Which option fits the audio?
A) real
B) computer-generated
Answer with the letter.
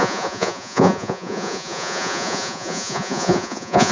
B